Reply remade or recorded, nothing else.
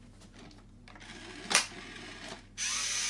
recorded